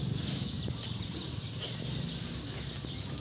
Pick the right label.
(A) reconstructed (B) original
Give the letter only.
B